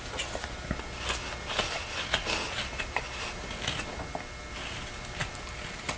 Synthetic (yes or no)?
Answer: no